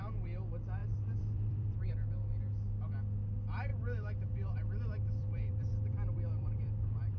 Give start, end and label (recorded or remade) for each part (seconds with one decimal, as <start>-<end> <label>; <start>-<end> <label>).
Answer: 0.0-0.8 recorded; 0.8-1.9 remade; 1.9-3.7 recorded; 3.7-7.2 remade